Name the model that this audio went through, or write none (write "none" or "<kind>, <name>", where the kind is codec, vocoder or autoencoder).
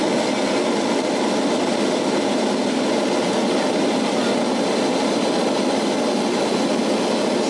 none